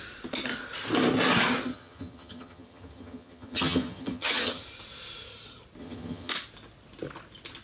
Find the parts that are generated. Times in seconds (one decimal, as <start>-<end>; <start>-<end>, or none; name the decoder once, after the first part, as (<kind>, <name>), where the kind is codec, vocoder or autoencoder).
1.7-4.6 (vocoder, HiFi-GAN); 5.8-6.3